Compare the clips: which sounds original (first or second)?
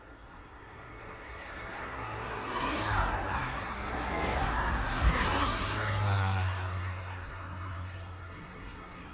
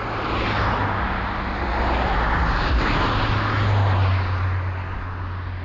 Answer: second